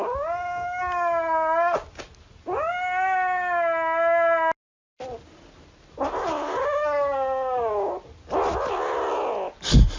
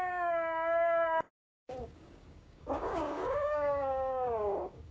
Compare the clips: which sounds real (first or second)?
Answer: first